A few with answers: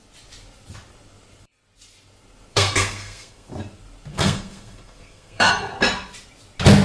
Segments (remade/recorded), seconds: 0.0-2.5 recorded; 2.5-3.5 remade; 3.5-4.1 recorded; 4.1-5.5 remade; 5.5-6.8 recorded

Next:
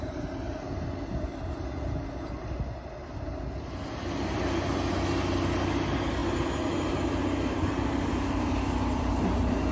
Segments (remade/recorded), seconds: 0.0-9.7 recorded

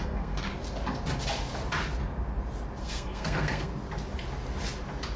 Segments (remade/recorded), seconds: 0.0-0.5 remade; 0.5-2.8 recorded; 2.8-3.7 remade; 3.7-5.2 recorded

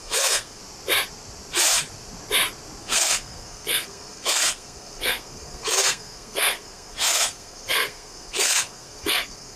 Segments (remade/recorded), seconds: 0.0-0.6 remade; 0.6-2.8 recorded; 2.8-9.6 remade

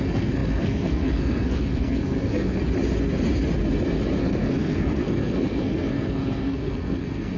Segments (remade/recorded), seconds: 0.0-2.6 remade; 2.6-4.2 recorded; 4.2-7.4 remade

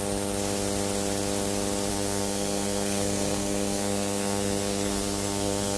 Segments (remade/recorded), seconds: 0.0-1.9 recorded; 1.9-5.8 remade

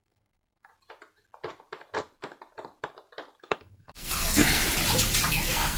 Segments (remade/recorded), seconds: 0.0-0.7 remade; 0.7-3.4 recorded; 3.4-4.6 remade; 4.6-5.3 recorded; 5.3-5.8 remade